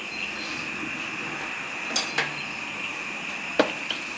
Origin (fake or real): real